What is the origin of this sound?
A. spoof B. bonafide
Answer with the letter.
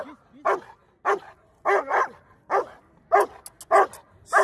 B